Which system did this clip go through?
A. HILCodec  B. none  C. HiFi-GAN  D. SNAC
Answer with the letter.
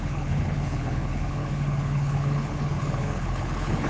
A